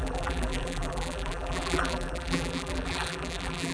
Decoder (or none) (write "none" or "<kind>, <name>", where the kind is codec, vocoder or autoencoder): vocoder, BigVGAN v2